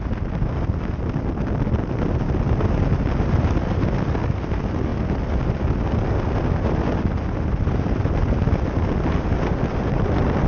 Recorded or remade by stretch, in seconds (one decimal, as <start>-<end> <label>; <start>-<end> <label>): 0.0-10.5 recorded